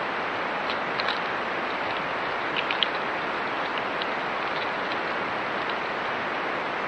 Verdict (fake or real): real